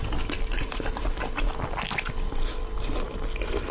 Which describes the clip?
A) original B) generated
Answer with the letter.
A